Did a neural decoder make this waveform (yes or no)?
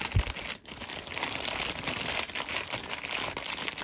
no